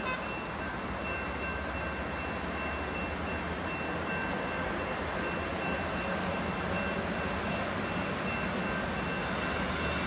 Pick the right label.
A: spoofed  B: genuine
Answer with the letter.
B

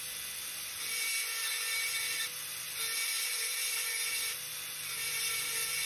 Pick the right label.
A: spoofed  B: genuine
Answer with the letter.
B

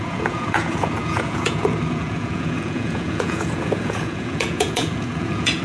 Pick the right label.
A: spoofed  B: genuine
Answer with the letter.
A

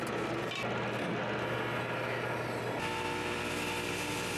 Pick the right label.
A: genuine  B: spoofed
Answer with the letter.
A